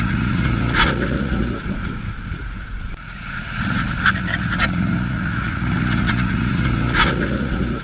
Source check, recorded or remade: remade